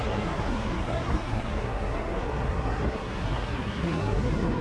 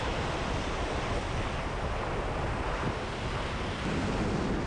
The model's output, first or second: first